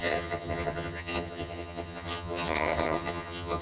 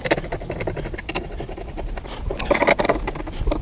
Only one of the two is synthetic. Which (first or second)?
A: first